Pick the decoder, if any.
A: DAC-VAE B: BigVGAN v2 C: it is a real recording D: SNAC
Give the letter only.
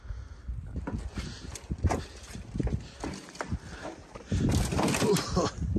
C